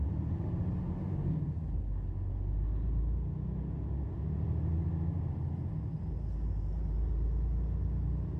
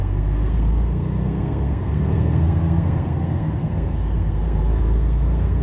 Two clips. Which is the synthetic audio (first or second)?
second